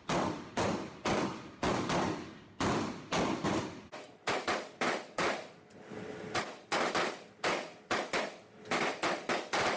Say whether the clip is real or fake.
real